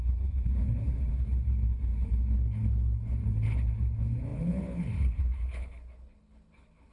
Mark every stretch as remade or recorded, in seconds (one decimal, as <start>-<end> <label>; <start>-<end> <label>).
0.0-6.9 remade